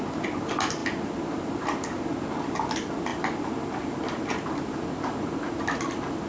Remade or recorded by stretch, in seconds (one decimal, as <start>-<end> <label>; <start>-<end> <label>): 0.0-6.3 recorded